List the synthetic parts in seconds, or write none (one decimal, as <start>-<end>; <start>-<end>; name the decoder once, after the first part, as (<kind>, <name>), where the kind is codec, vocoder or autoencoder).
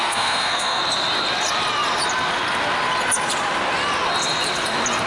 0.0-0.8 (codec, SNAC)